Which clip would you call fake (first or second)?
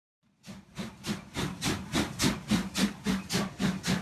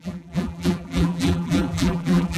second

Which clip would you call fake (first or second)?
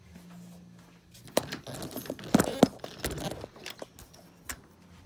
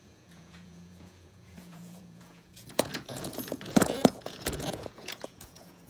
second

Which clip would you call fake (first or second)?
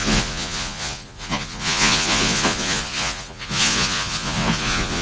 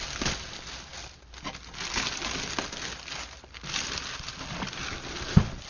first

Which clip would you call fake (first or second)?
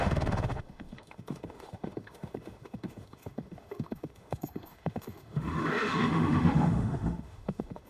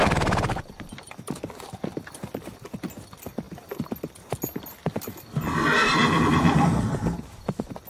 first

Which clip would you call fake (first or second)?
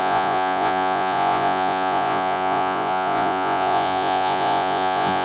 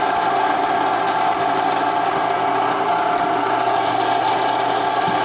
first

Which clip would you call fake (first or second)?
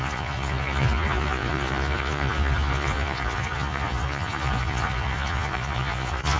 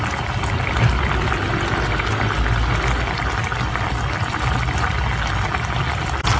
first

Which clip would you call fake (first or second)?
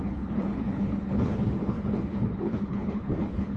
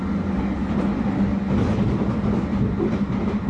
first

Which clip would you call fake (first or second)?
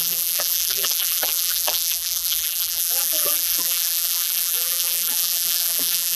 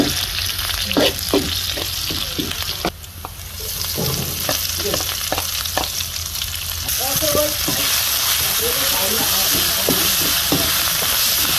first